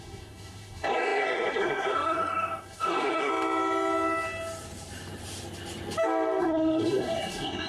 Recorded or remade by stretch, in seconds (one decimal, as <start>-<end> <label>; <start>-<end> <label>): 0.0-3.3 remade; 3.3-6.4 recorded; 6.4-7.7 remade